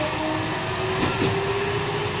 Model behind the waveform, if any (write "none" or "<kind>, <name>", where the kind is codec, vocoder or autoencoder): none